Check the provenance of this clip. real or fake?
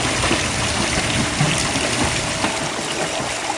real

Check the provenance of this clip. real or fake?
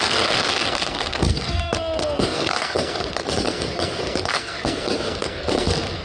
fake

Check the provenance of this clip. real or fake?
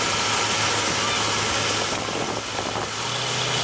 real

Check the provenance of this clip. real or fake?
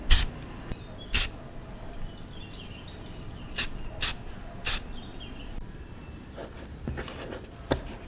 real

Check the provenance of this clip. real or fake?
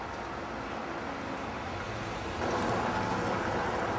real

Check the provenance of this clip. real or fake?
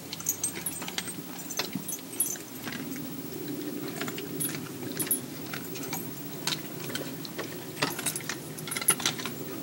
real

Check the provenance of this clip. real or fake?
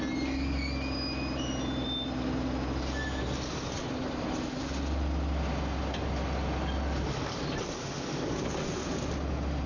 real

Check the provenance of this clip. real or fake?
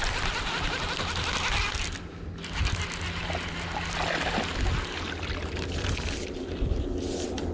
real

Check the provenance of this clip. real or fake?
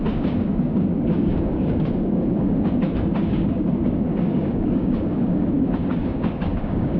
fake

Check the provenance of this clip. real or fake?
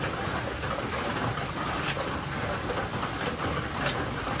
real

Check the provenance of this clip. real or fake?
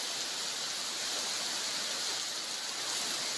real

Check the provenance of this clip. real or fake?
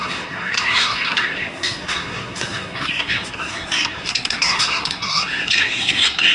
fake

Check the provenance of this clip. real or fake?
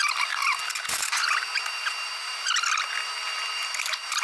real